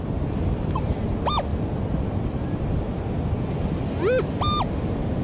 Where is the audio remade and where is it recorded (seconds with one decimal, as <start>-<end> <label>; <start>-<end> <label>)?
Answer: 0.0-5.2 recorded